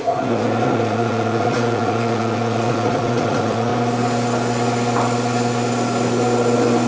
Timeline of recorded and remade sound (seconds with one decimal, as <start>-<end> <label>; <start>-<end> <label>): 0.0-3.7 remade; 3.7-6.9 recorded